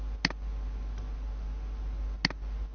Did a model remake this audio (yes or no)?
no